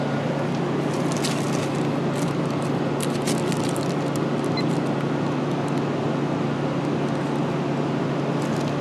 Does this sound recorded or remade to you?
recorded